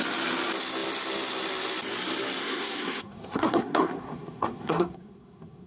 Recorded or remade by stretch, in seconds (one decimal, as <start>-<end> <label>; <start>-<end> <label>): 0.0-2.4 recorded; 2.4-5.7 remade